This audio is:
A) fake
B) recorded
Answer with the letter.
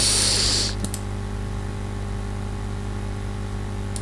B